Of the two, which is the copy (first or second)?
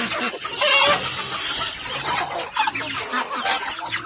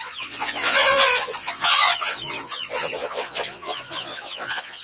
second